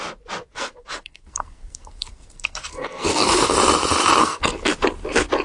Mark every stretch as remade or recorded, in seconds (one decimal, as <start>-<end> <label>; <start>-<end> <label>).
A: 0.0-0.5 recorded; 0.5-3.4 remade; 3.4-4.2 recorded; 4.2-4.7 remade; 4.7-5.4 recorded